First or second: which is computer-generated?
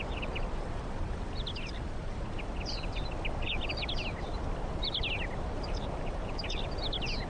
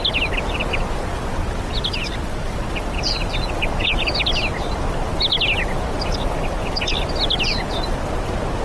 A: first